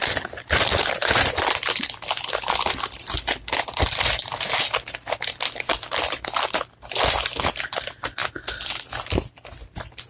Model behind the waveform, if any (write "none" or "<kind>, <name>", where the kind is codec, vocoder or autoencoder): none